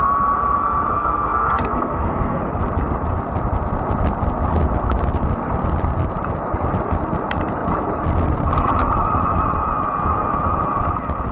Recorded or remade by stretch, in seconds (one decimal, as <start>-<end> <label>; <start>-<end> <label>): 0.0-0.9 recorded; 0.9-2.4 remade; 2.4-11.3 recorded